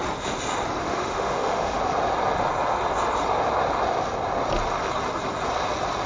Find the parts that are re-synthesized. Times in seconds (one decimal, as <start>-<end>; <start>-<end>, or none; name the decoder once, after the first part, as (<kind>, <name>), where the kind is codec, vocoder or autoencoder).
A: 0.8-1.8 (autoencoder, DAC-VAE)